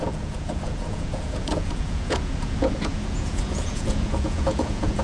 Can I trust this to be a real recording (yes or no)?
no